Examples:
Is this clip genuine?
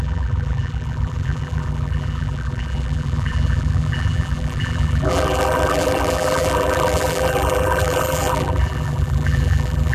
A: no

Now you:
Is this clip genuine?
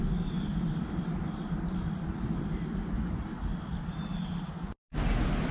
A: yes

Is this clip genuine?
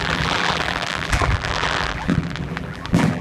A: no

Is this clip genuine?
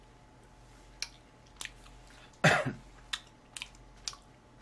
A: yes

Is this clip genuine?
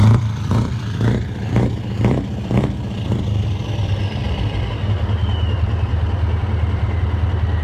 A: no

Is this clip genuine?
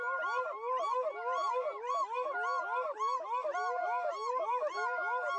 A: yes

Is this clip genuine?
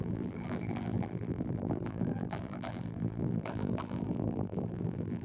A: no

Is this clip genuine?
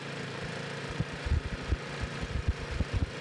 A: yes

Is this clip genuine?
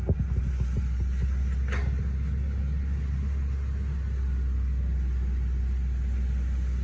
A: yes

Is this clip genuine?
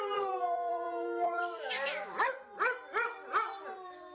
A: no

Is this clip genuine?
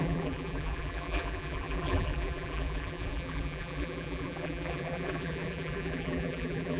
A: no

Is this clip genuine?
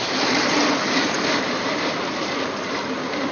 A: no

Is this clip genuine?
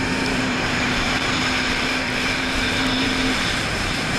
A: no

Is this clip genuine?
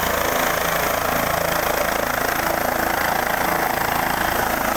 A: yes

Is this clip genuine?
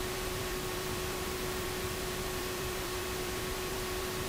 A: no